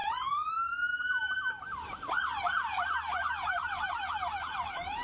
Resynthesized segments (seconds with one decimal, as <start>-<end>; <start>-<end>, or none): 0.0-0.5